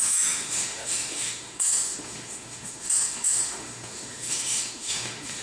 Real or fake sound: fake